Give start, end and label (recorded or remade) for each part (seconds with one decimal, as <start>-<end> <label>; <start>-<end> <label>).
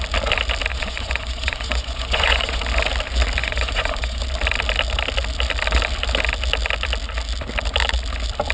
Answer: 0.0-0.7 recorded; 0.7-2.6 remade; 2.6-3.4 recorded; 3.4-4.2 remade; 4.2-8.5 recorded